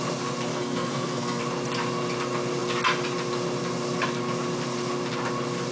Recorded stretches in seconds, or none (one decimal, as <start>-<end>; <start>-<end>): 0.0-0.5; 1.4-5.7